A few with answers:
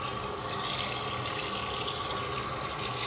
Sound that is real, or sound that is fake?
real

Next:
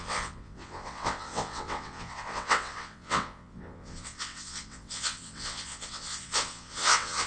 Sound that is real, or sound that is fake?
fake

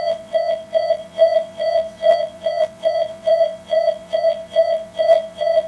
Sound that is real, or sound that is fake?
fake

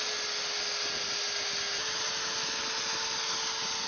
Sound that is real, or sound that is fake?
real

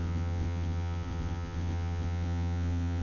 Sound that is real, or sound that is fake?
fake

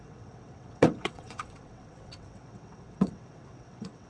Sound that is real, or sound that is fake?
fake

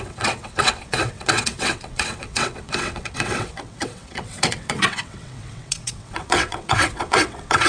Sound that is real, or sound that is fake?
fake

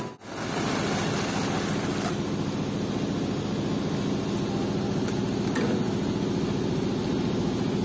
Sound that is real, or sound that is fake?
real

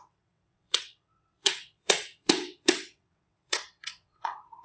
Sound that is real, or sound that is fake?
fake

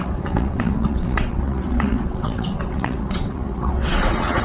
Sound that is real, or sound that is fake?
fake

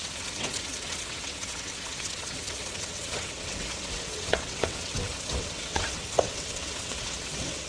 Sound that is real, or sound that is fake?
fake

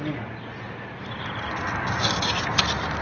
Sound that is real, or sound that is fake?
real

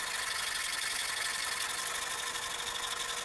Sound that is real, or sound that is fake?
real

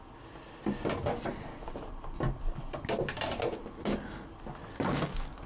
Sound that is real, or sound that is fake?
real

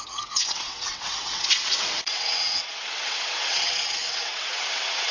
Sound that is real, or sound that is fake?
fake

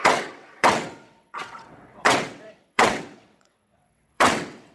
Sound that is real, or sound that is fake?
fake